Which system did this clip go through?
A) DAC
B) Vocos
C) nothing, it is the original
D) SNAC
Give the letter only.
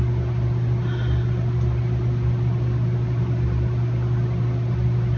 C